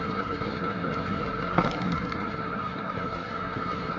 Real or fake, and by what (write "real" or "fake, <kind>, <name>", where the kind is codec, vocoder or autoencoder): fake, codec, SNAC